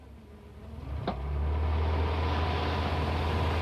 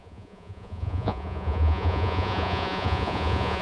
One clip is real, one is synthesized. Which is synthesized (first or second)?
second